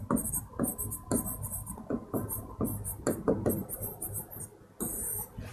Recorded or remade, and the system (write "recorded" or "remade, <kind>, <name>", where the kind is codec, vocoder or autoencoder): recorded